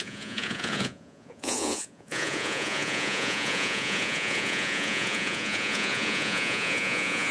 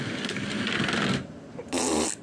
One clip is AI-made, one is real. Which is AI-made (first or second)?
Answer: first